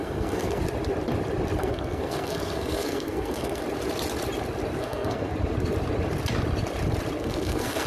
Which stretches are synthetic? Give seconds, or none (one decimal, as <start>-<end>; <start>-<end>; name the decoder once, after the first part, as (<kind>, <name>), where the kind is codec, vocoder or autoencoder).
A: 0.0-0.6 (codec, SNAC); 1.6-3.6; 4.8-5.3; 7.2-7.9